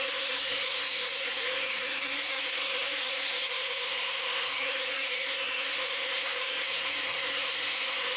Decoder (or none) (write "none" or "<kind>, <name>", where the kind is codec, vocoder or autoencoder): codec, SNAC